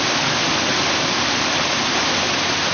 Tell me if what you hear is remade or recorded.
recorded